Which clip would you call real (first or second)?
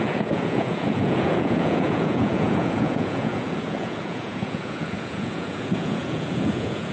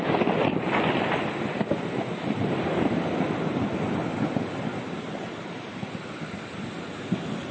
second